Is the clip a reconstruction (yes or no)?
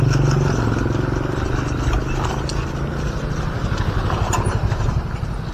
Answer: no